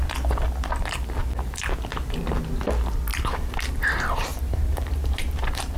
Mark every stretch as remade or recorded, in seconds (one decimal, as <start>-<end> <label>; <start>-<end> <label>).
0.0-3.1 recorded; 3.1-3.7 remade; 3.7-4.3 recorded; 4.3-5.8 remade